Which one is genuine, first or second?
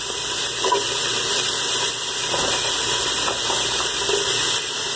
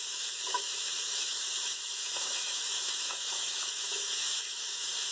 first